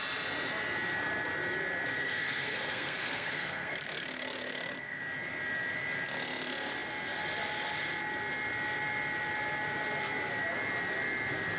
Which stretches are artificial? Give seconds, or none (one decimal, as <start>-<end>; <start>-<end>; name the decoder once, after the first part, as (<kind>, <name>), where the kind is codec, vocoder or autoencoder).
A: 2.0-5.0 (codec, SNAC)